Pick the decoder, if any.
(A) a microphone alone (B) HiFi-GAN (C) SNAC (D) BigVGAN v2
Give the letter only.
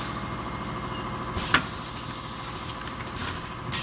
A